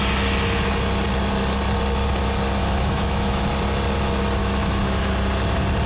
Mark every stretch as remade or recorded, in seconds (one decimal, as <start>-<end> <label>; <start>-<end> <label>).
0.0-2.6 recorded; 2.6-3.5 remade; 3.5-4.4 recorded; 4.4-5.1 remade; 5.1-5.9 recorded